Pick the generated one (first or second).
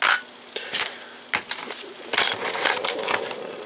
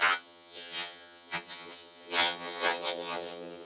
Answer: second